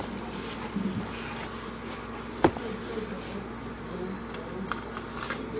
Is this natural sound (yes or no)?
yes